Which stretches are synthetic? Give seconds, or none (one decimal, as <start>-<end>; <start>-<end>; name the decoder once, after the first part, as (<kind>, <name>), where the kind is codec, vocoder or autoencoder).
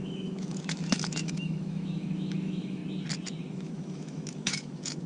0.0-2.8 (autoencoder, DAC-VAE); 3.5-5.1